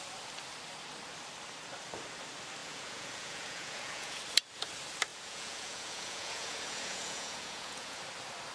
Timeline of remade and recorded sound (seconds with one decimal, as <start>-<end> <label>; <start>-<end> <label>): 0.0-2.6 recorded; 2.6-4.2 remade; 4.2-5.1 recorded; 5.1-8.0 remade; 8.0-8.5 recorded